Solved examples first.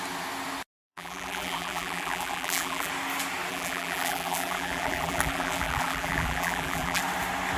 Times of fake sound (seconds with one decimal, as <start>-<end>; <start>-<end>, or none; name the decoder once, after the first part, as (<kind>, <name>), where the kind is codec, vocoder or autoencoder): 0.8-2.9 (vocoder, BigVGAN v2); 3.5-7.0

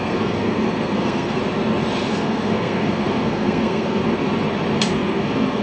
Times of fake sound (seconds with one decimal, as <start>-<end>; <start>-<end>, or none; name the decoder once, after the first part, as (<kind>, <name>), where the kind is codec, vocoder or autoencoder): 0.0-1.4 (codec, SNAC); 2.0-4.0; 4.9-5.6

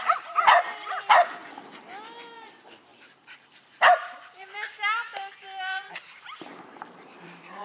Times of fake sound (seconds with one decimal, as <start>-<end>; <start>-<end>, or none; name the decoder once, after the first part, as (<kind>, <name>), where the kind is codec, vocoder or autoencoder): 0.0-1.4 (vocoder, BigVGAN v2); 2.2-7.6